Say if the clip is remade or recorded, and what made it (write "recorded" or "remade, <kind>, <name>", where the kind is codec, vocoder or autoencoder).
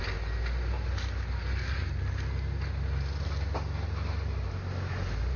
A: recorded